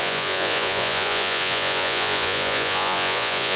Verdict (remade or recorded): remade